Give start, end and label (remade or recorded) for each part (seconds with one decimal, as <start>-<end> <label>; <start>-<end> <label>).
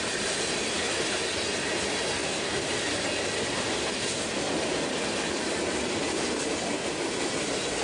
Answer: 0.0-7.8 recorded